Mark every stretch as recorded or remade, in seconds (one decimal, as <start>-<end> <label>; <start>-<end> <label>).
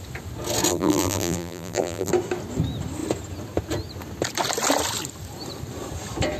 0.0-0.7 recorded; 0.7-2.1 remade; 2.1-6.4 recorded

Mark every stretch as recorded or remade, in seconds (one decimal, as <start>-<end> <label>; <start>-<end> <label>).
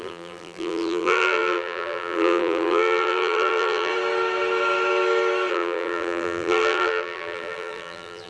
0.0-3.9 remade; 3.9-5.5 recorded; 5.5-8.3 remade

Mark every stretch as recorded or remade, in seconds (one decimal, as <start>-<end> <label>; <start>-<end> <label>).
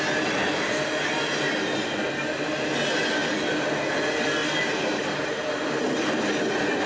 0.0-4.4 recorded; 4.4-5.8 remade; 5.8-6.9 recorded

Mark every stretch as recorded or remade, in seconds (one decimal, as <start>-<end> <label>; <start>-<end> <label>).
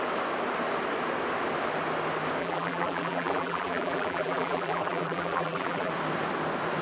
0.0-2.4 recorded; 2.4-5.9 remade; 5.9-6.8 recorded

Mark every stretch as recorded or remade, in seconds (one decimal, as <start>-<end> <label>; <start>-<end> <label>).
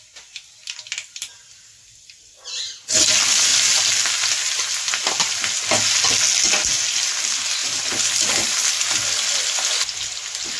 0.0-10.6 recorded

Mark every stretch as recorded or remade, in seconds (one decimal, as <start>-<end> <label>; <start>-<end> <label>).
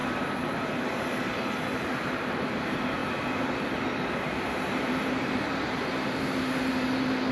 0.0-1.9 recorded; 1.9-3.0 remade; 3.0-4.3 recorded; 4.3-7.3 remade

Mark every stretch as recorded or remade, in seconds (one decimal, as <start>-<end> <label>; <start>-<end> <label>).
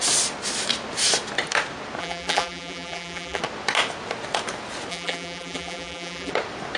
0.0-2.0 recorded; 2.0-3.4 remade; 3.4-4.9 recorded; 4.9-6.3 remade; 6.3-6.8 recorded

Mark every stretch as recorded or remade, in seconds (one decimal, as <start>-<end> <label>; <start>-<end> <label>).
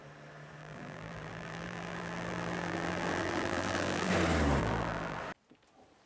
0.0-0.6 recorded; 0.6-4.1 remade; 4.1-4.6 recorded; 4.6-5.2 remade; 5.2-6.1 recorded